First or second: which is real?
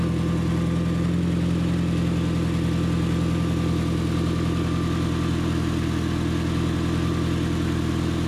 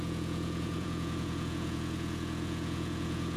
first